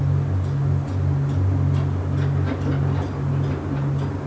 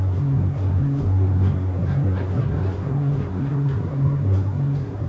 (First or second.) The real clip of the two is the first